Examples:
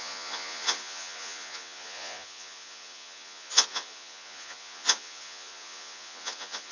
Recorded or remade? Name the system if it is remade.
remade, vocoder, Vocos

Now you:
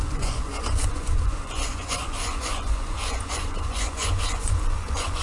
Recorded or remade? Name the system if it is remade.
remade, vocoder, Vocos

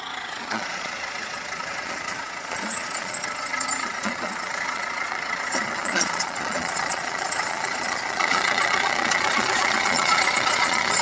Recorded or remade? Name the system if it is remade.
remade, vocoder, Vocos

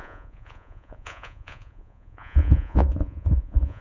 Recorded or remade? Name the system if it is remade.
remade, vocoder, Vocos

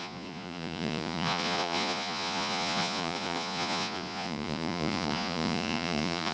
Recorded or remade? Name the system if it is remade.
remade, vocoder, Vocos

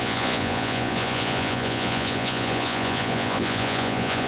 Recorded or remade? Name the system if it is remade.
remade, vocoder, Vocos